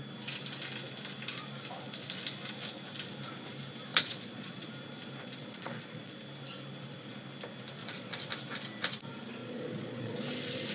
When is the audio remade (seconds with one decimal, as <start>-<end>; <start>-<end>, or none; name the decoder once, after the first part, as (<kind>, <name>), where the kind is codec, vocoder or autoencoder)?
3.9-4.7 (vocoder, Vocos); 5.4-6.2; 7.8-8.3; 9.4-10.2